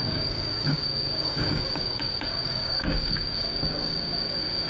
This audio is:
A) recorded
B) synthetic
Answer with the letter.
B